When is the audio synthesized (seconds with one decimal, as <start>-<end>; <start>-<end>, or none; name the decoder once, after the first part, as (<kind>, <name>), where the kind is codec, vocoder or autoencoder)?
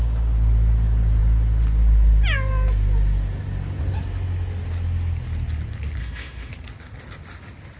6.0-6.5 (autoencoder, DAC-VAE)